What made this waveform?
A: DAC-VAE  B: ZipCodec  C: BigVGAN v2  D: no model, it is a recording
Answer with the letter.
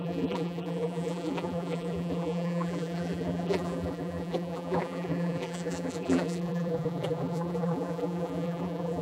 C